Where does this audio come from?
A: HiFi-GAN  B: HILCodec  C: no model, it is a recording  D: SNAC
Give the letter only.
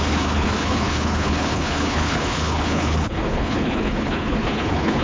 B